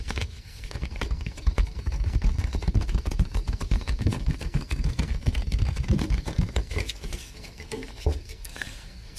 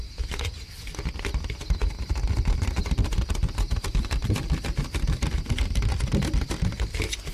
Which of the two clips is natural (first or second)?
second